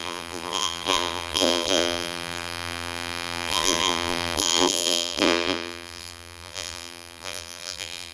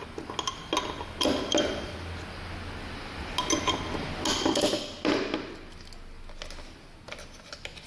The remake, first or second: first